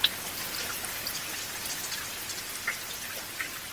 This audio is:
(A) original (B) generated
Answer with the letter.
A